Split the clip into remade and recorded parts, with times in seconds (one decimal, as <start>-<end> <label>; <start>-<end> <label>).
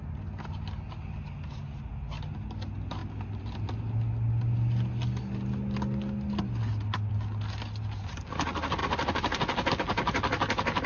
0.0-10.9 recorded